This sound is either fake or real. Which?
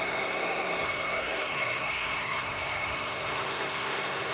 fake